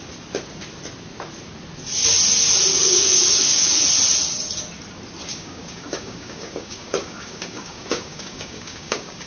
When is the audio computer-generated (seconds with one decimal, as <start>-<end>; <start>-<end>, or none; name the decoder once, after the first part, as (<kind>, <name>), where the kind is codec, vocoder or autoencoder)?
2.7-3.8 (codec, DAC); 5.3-9.3